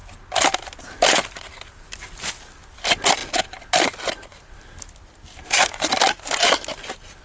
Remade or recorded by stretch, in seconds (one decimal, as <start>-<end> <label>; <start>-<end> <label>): 0.0-7.2 recorded